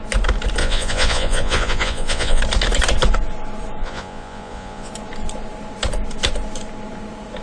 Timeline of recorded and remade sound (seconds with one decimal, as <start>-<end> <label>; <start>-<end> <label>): 0.0-0.6 recorded; 0.6-2.4 remade; 2.4-3.8 recorded; 3.8-4.9 remade; 4.9-7.4 recorded